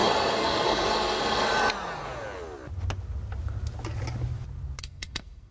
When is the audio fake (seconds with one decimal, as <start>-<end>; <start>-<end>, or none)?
0.0-1.5; 4.8-5.5